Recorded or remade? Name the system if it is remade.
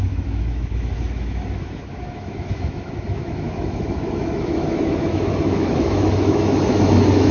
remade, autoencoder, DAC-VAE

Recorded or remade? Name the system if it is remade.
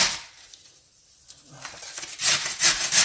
recorded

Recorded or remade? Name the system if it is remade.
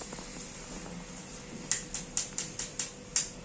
recorded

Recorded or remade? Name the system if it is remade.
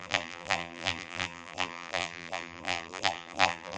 remade, vocoder, BigVGAN v2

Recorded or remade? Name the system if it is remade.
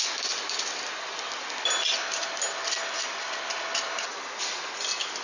recorded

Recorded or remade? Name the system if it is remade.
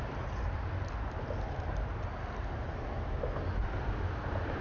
recorded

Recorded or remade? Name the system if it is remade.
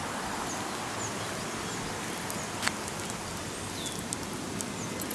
recorded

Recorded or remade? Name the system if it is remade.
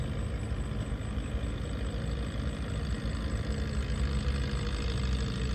recorded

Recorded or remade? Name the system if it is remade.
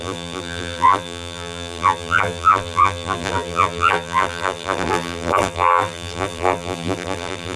remade, vocoder, BigVGAN v2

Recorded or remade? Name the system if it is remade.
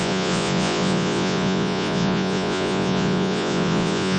remade, vocoder, Vocos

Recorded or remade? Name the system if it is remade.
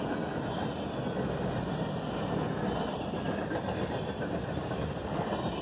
recorded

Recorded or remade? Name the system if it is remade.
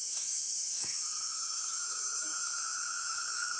remade, autoencoder, DAC-VAE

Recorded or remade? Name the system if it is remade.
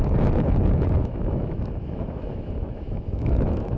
remade, autoencoder, DAC-VAE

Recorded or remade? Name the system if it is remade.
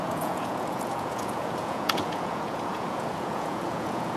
remade, vocoder, Vocos